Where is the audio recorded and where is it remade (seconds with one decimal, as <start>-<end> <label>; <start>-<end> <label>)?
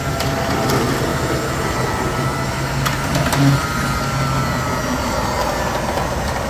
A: 0.0-1.1 remade; 1.1-5.0 recorded; 5.0-5.4 remade; 5.4-6.1 recorded; 6.1-6.5 remade